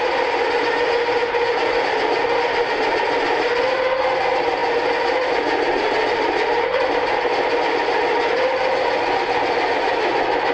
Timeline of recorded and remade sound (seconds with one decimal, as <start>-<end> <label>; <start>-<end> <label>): 0.0-10.5 recorded